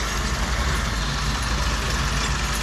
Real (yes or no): yes